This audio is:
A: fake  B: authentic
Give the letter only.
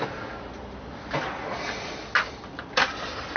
B